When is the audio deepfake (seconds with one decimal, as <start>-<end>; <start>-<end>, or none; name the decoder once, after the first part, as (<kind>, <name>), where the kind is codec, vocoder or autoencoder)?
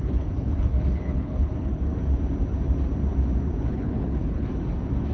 0.0-1.9 (codec, HILCodec); 3.7-4.5